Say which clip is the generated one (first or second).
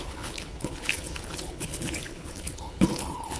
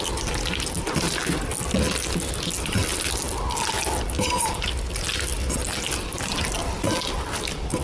first